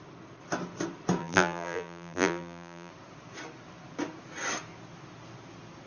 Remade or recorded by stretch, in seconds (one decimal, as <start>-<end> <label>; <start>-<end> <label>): 0.0-1.2 recorded; 1.2-2.9 remade; 2.9-5.9 recorded